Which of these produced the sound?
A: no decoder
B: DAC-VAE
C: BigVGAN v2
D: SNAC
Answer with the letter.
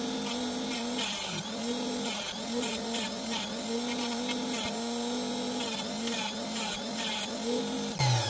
A